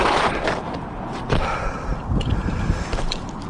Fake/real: real